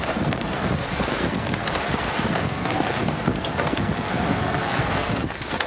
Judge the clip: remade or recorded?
remade